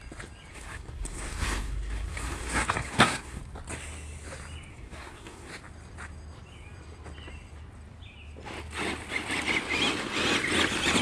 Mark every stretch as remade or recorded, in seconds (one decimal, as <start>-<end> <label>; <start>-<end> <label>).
0.0-0.5 recorded; 0.5-3.4 remade; 3.4-4.7 recorded; 4.7-5.5 remade; 5.5-11.0 recorded